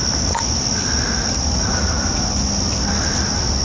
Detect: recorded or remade recorded